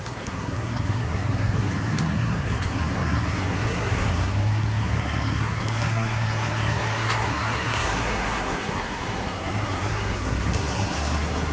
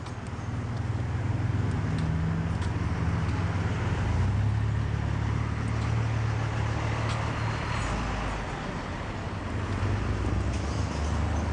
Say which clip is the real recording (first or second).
second